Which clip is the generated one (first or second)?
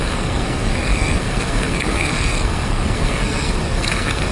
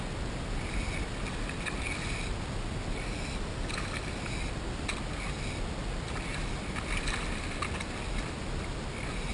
first